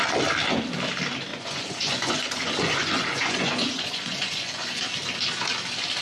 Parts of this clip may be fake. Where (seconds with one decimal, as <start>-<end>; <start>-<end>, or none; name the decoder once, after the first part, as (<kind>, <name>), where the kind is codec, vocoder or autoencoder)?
1.3-4.8 (vocoder, Vocos)